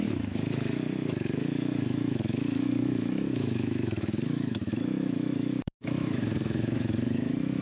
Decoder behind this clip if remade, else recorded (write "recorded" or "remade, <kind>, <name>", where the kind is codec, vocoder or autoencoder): remade, autoencoder, DAC-VAE